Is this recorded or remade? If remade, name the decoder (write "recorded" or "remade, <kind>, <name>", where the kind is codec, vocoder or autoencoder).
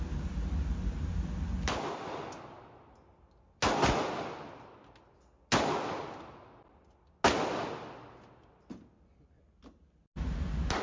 recorded